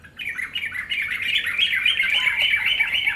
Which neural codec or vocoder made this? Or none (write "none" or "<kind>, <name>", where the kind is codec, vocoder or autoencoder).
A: none